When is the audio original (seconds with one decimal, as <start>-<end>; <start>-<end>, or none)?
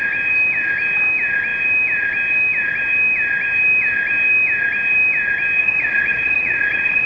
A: 0.0-5.6